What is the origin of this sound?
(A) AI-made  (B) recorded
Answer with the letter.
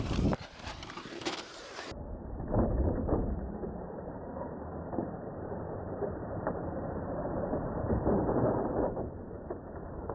A